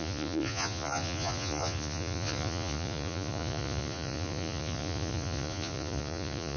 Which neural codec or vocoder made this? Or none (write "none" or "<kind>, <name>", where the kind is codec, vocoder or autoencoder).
vocoder, Vocos